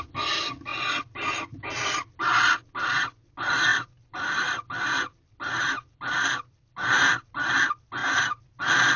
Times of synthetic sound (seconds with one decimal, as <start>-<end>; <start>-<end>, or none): 3.7-7.1